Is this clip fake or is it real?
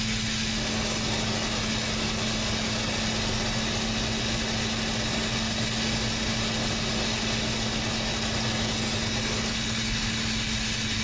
real